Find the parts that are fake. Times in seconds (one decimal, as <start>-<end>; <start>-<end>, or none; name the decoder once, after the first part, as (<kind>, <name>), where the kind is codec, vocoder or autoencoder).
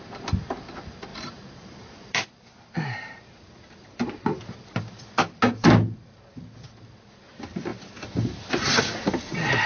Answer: 1.1-5.0 (vocoder, BigVGAN v2)